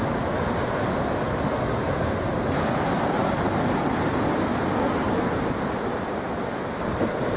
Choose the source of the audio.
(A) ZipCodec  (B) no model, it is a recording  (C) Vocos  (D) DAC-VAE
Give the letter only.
B